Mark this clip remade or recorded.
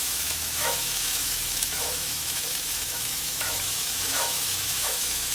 remade